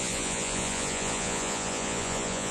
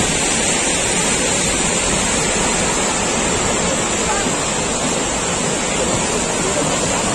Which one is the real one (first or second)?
second